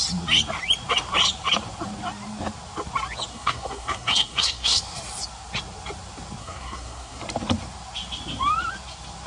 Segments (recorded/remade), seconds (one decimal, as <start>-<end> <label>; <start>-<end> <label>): 0.0-3.3 recorded; 3.3-4.8 remade; 4.8-6.4 recorded; 6.4-7.2 remade; 7.2-9.3 recorded